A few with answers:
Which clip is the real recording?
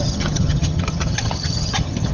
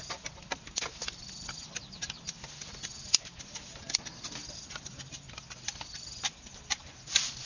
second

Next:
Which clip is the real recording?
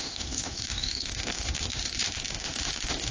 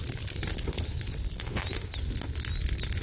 second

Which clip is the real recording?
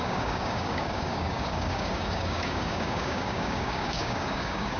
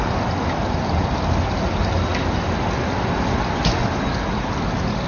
second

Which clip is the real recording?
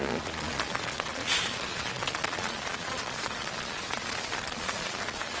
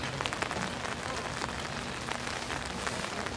second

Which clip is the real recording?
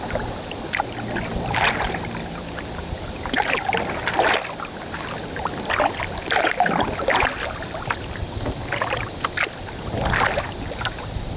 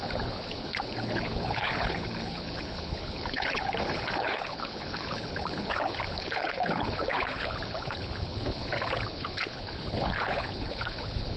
first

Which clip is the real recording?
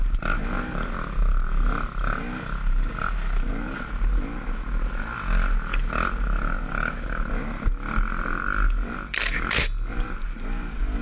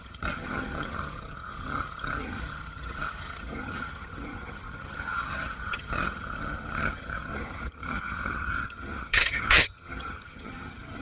first